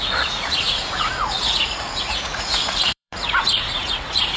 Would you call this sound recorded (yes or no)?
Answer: no